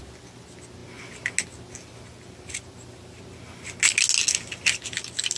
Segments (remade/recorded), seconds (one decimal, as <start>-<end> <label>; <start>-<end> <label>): 0.0-5.4 recorded